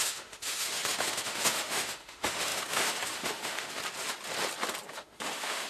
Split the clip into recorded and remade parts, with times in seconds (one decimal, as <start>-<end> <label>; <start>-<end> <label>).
0.0-3.8 remade; 3.8-4.9 recorded; 4.9-5.7 remade